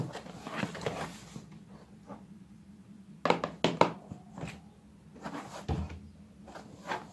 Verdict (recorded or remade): recorded